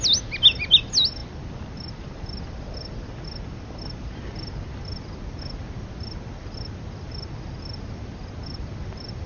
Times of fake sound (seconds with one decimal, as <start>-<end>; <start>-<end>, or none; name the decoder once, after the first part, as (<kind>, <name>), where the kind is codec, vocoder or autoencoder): none